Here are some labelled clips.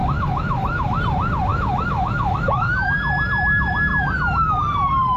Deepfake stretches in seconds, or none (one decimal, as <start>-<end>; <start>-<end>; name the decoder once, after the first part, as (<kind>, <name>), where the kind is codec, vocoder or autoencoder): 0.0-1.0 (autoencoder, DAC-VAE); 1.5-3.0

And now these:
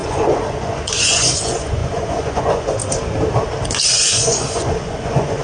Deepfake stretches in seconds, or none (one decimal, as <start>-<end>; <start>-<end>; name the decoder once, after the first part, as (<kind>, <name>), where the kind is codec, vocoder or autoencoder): 0.0-2.8 (vocoder, Vocos); 3.9-5.4

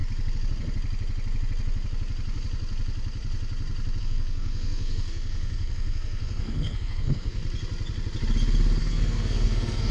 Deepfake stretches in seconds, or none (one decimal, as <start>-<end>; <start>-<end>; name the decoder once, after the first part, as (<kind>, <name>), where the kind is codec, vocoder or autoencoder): 4.0-7.4 (codec, SNAC); 8.8-9.9

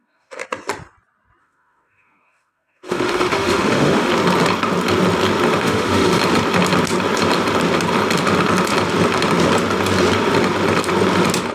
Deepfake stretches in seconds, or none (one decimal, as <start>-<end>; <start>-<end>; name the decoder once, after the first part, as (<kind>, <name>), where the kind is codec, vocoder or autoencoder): 0.0-0.4 (autoencoder, DAC-VAE); 1.4-4.1; 5.6-6.2